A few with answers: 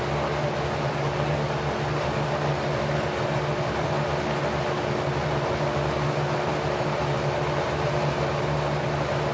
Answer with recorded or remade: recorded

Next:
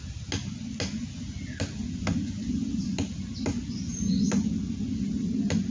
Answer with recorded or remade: recorded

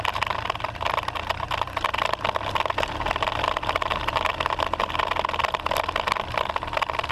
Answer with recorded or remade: recorded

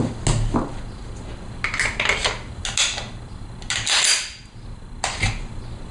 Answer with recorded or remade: recorded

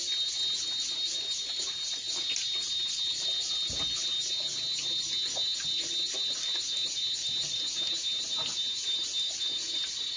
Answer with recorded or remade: recorded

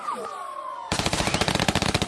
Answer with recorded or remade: remade